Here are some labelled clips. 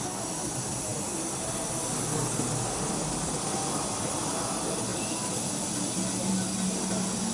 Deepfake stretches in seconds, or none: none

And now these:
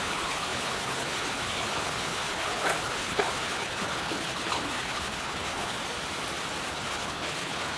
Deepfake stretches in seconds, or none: 0.0-5.8 (codec, HILCodec); 6.7-7.8

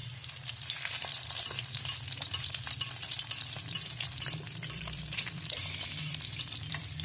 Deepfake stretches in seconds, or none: 0.0-7.0 (vocoder, BigVGAN v2)